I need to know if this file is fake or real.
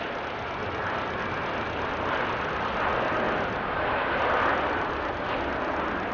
real